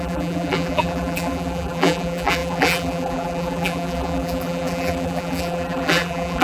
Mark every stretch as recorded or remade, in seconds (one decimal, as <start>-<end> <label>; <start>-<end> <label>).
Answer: 0.0-6.4 remade